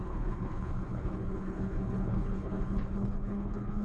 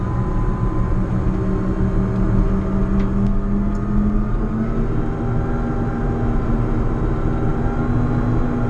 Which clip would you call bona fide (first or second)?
second